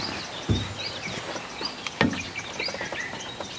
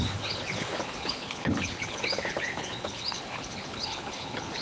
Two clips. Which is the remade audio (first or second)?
second